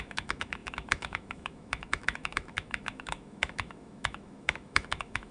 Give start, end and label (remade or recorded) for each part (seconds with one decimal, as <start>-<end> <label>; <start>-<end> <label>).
0.0-5.3 remade